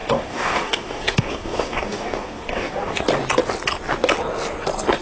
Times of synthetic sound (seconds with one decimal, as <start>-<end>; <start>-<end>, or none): 0.0-3.0